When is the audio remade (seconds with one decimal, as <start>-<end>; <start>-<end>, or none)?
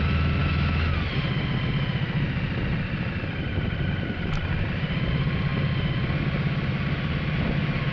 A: none